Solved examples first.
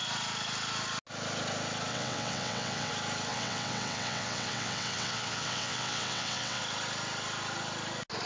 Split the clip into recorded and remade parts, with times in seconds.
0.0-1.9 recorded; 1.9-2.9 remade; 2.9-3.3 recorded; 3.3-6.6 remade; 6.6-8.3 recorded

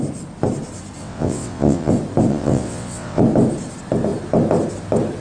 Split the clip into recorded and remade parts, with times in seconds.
0.0-1.0 recorded; 1.0-1.9 remade; 1.9-2.3 recorded; 2.3-3.2 remade; 3.2-5.2 recorded

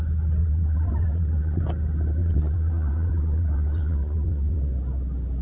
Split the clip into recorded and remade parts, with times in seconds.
0.0-0.4 recorded; 0.4-1.6 remade; 1.6-2.2 recorded; 2.2-4.7 remade; 4.7-5.4 recorded

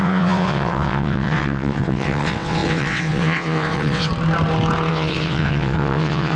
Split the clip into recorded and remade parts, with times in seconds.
0.0-4.1 remade; 4.1-4.9 recorded; 4.9-6.4 remade

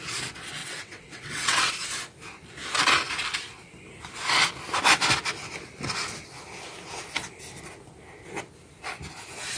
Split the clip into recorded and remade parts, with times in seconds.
0.0-0.6 recorded; 0.6-1.7 remade; 1.7-9.6 recorded

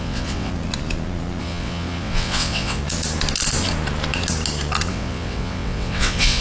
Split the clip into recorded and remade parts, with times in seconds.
0.0-0.5 remade; 0.5-1.4 recorded; 1.4-2.8 remade; 2.8-4.9 recorded; 4.9-6.4 remade

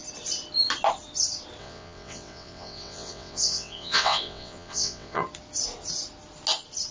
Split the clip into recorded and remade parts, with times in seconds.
0.0-1.6 recorded; 1.6-5.2 remade; 5.2-6.9 recorded

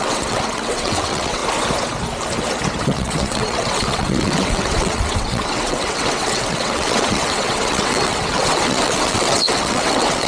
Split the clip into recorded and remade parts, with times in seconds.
0.0-1.4 remade; 1.4-2.8 recorded; 2.8-10.3 remade